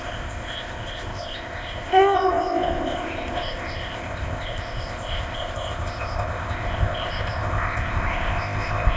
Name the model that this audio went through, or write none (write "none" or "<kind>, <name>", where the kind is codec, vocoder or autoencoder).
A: codec, ZipCodec